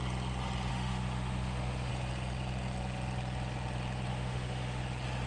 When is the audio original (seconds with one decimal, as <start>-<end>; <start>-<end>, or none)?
0.0-0.7; 1.9-4.1; 4.8-5.3